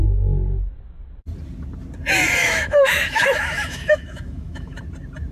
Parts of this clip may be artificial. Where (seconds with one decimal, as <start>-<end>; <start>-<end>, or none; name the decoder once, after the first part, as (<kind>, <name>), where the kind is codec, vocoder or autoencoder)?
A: 2.4-4.8 (autoencoder, DAC-VAE)